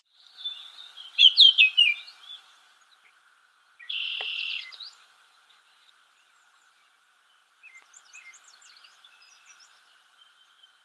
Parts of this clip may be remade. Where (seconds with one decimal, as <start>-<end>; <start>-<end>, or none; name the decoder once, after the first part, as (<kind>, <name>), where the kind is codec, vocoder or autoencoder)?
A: 3.4-5.9 (vocoder, Vocos)